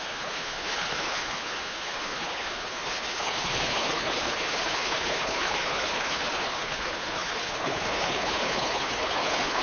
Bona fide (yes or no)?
no